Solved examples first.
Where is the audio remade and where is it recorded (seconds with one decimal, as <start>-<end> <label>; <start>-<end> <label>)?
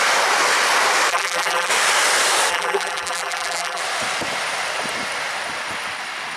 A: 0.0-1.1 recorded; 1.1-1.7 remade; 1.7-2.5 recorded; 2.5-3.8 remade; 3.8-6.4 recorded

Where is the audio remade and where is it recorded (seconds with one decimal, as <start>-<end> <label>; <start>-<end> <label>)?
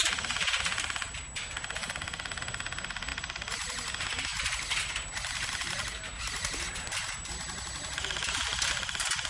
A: 0.0-3.1 recorded; 3.1-3.9 remade; 3.9-4.3 recorded; 4.3-7.3 remade; 7.3-9.3 recorded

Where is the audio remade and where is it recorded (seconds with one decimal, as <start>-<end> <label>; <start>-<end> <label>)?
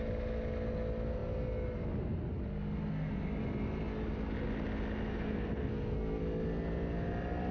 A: 0.0-5.1 recorded; 5.1-6.2 remade; 6.2-7.5 recorded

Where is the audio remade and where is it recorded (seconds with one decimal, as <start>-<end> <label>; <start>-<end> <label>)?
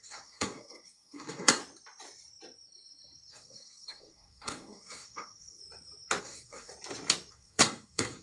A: 0.0-1.6 remade; 1.6-3.3 recorded; 3.3-5.6 remade; 5.6-6.2 recorded; 6.2-6.7 remade; 6.7-7.3 recorded; 7.3-8.2 remade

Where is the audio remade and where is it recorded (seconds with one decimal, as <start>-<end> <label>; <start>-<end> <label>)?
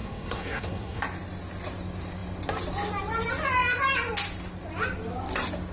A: 0.0-1.0 remade; 1.0-5.7 recorded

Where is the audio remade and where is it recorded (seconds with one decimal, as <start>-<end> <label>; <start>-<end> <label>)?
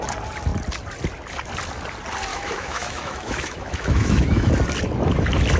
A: 0.0-2.3 recorded; 2.3-4.5 remade; 4.5-5.6 recorded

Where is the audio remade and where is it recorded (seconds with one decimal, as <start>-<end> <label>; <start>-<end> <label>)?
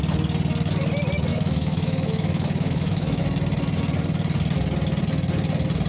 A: 0.0-1.3 recorded; 1.3-3.2 remade; 3.2-5.9 recorded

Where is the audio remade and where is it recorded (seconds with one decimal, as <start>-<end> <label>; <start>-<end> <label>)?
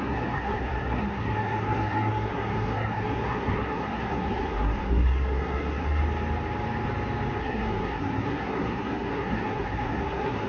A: 0.0-6.0 remade; 6.0-7.4 recorded; 7.4-10.5 remade